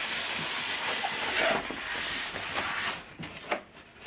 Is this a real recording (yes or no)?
yes